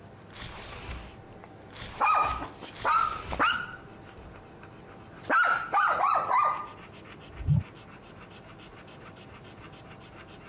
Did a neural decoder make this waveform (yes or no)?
no